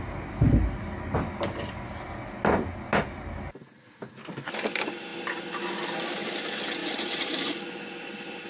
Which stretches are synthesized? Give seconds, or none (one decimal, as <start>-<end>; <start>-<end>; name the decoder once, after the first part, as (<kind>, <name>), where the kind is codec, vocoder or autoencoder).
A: 6.8-7.5 (vocoder, BigVGAN v2)